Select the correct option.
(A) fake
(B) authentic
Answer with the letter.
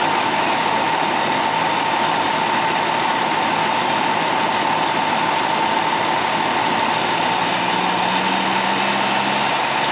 B